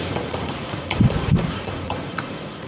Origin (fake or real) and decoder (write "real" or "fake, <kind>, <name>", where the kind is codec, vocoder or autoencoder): fake, vocoder, Vocos